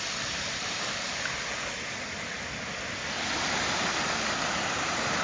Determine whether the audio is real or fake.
real